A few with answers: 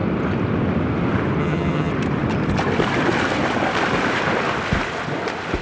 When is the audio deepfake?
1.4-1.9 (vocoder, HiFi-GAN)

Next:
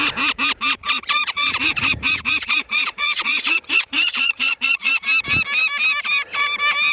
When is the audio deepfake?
0.8-4.9 (vocoder, Vocos)

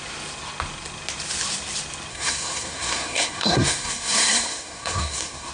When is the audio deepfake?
2.1-5.5 (codec, SNAC)

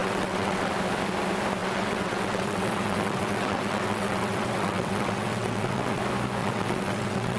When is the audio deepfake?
0.0-0.7 (vocoder, WaveNeXt); 1.6-6.0; 6.4-7.4